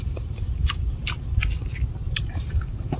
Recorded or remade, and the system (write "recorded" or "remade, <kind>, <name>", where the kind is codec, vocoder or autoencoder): recorded